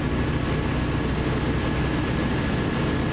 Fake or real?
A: real